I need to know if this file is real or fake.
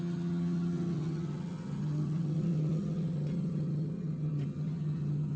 fake